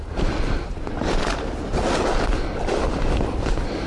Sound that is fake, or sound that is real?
real